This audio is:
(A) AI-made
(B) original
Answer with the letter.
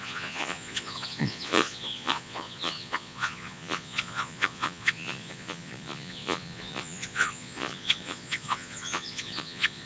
A